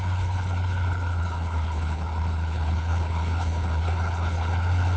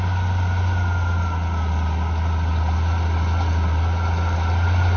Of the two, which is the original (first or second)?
second